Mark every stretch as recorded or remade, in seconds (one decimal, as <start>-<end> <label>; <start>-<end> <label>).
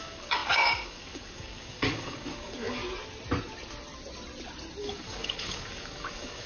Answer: 0.0-2.8 remade; 2.8-4.8 recorded; 4.8-6.5 remade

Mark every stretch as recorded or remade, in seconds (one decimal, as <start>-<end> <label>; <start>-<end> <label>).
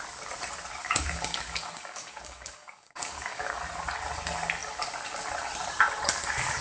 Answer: 0.0-0.8 recorded; 0.8-3.6 remade; 3.6-6.6 recorded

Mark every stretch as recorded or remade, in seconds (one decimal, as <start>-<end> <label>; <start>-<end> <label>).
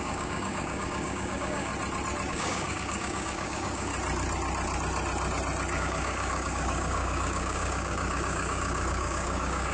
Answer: 0.0-1.7 remade; 1.7-2.3 recorded; 2.3-3.9 remade; 3.9-5.8 recorded; 5.8-9.7 remade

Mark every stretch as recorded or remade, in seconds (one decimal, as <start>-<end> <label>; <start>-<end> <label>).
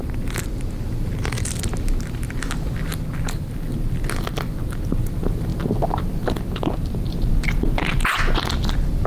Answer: 0.0-9.1 recorded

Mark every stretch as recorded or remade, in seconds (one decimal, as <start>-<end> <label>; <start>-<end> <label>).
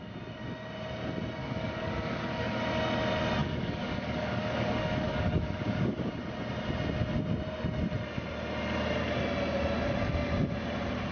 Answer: 0.0-1.4 recorded; 1.4-2.6 remade; 2.6-3.4 recorded; 3.4-6.1 remade; 6.1-11.1 recorded